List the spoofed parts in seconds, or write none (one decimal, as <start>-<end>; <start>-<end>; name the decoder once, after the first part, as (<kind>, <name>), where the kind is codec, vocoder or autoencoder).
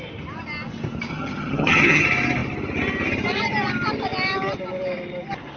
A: 1.1-2.0 (vocoder, HiFi-GAN)